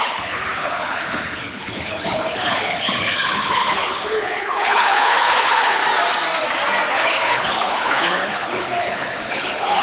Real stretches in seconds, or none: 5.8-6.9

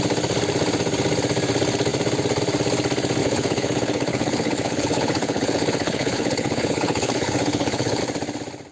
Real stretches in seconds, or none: 0.0-3.2; 8.0-8.7

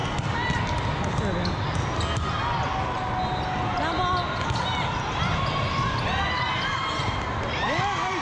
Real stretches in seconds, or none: 0.0-8.2

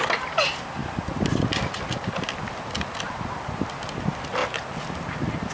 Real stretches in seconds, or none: 0.0-5.5

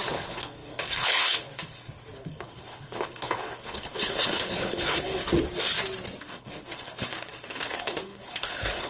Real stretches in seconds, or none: 5.2-6.2

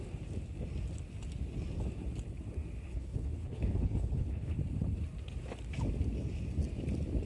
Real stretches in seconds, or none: 0.0-2.9; 4.6-7.3

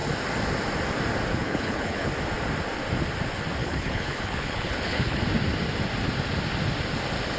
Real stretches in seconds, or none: 0.0-1.3; 2.1-3.6; 5.2-7.4

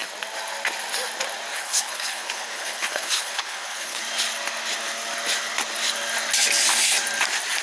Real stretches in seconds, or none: 0.0-1.5; 4.0-7.6